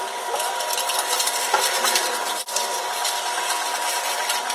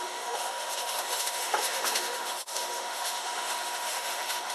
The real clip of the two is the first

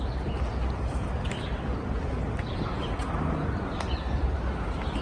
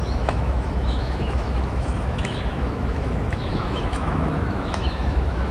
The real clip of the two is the first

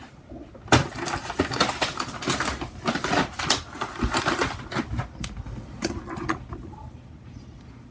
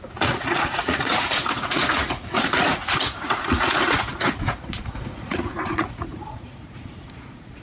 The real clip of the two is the first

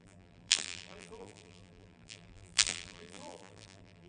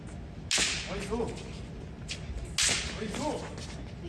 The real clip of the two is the second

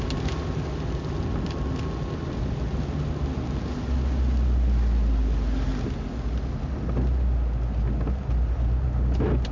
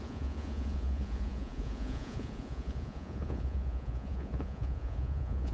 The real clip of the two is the first